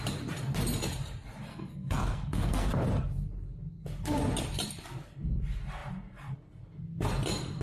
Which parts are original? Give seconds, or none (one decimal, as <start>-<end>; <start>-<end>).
0.0-1.5; 2.7-7.6